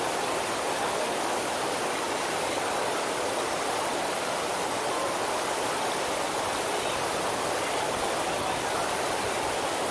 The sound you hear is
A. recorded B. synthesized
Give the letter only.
A